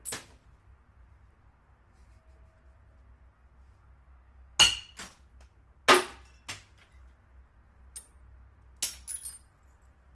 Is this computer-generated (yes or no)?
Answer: no